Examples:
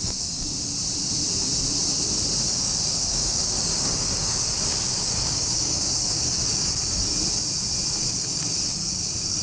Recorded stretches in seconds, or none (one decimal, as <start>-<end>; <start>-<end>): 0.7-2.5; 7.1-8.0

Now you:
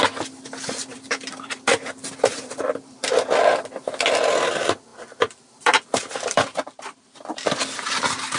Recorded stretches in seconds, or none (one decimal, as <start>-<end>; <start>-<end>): 0.0-0.9; 3.6-4.9; 7.4-8.4

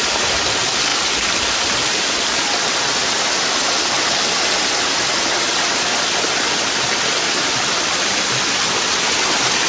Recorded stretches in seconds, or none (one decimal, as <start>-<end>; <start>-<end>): 0.0-9.7